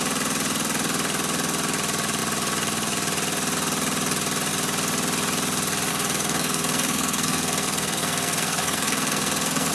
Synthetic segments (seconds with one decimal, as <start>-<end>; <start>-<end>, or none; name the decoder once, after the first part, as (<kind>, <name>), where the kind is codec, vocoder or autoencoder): 5.9-9.7 (codec, SNAC)